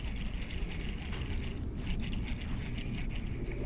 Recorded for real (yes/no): yes